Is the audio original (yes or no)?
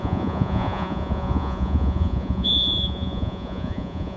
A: no